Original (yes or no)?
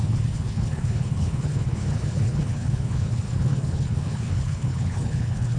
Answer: no